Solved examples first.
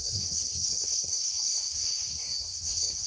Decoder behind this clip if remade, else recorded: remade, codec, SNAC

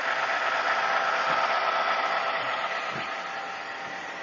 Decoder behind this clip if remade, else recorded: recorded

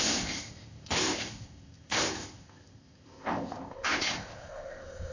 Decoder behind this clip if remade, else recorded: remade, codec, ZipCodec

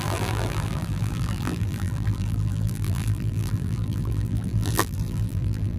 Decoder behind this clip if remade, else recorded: remade, vocoder, BigVGAN v2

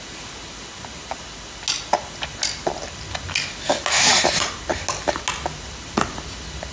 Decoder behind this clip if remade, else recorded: recorded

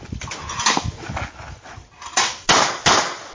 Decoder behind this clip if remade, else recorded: recorded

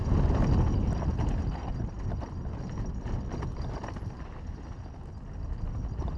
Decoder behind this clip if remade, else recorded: recorded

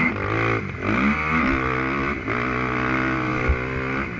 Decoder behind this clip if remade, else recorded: recorded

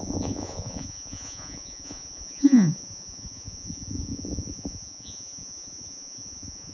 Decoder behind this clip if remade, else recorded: remade, vocoder, Vocos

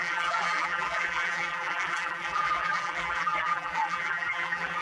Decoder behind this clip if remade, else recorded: remade, vocoder, BigVGAN v2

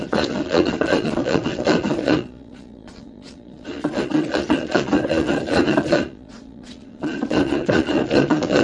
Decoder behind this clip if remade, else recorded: remade, vocoder, Vocos